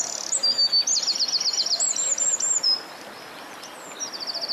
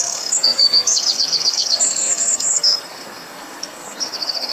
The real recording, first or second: first